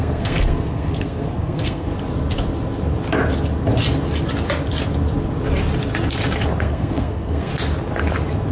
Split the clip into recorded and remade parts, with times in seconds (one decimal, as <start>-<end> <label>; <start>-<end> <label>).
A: 0.0-1.9 remade; 1.9-6.6 recorded; 6.6-7.5 remade; 7.5-8.5 recorded